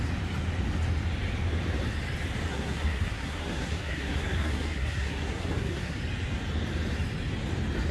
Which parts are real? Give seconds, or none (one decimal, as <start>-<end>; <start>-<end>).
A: 0.0-2.5; 6.0-7.9

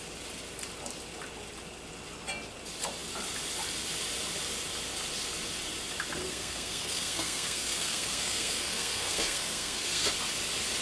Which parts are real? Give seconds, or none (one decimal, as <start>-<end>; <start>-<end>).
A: 0.0-6.2; 10.1-10.8

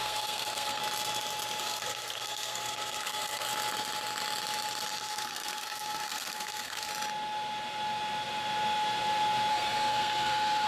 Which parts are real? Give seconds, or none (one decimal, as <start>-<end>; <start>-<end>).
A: 0.8-1.6; 3.5-5.0; 6.9-9.5

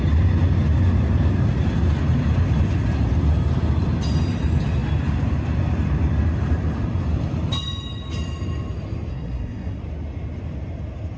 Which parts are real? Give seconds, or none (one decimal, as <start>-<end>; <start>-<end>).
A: 0.0-9.1; 9.8-11.2

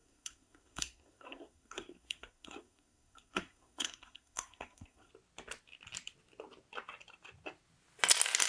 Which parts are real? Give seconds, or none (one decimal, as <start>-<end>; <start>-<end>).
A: 5.1-8.5

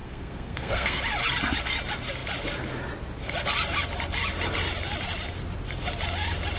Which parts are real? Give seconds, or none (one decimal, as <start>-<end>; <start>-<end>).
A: 1.0-6.6

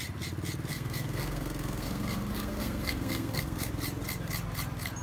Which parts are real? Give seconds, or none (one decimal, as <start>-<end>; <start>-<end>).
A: 0.0-0.7; 3.7-5.0

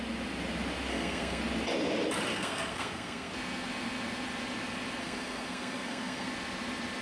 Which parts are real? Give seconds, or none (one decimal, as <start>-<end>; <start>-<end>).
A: 0.0-0.9; 1.4-2.3; 3.3-5.0; 6.3-7.0